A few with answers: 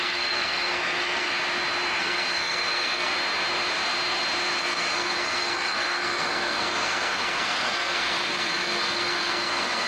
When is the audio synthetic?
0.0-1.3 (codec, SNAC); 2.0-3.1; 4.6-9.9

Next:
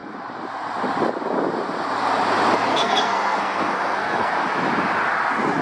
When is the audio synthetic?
2.7-4.3 (codec, SNAC)